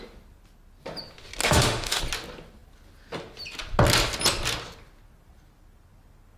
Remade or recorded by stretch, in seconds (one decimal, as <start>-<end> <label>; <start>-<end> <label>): 0.0-1.4 recorded; 1.4-2.0 remade; 2.0-6.4 recorded